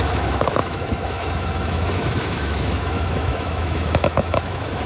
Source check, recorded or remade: remade